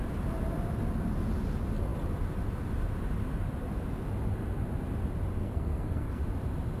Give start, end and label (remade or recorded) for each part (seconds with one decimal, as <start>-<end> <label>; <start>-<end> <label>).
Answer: 0.0-5.4 recorded; 5.4-6.2 remade; 6.2-6.8 recorded